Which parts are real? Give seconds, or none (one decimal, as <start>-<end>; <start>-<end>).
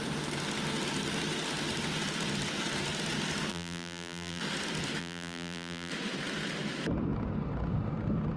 0.0-3.5; 4.4-5.0; 5.9-8.4